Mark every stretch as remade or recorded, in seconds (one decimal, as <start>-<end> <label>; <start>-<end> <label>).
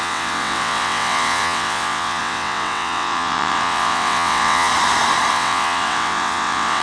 0.0-4.7 remade; 4.7-5.3 recorded; 5.3-6.8 remade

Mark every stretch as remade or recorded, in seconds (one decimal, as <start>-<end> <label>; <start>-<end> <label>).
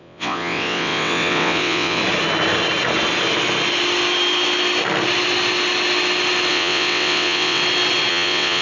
0.0-2.0 remade; 2.0-6.5 recorded; 6.5-7.6 remade; 7.6-8.1 recorded; 8.1-8.6 remade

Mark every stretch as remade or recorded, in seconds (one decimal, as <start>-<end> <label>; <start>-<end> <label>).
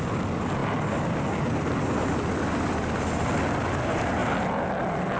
0.0-5.2 recorded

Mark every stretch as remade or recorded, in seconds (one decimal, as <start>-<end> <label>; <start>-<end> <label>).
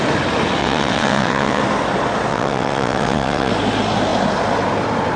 0.0-0.6 recorded; 0.6-1.6 remade; 1.6-2.3 recorded; 2.3-3.5 remade; 3.5-5.2 recorded